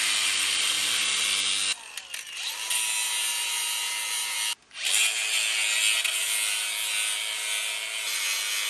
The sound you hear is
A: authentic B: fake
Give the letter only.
A